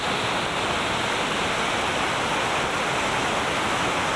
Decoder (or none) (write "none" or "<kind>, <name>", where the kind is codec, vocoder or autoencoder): none